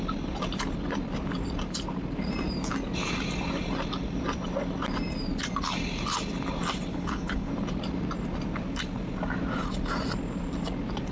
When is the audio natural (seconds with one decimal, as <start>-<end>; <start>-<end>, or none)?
0.0-6.9; 7.5-11.1